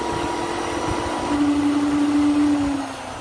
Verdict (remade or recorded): recorded